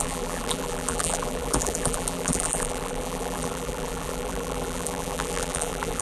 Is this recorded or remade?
remade